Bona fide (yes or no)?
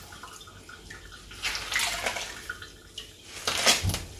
yes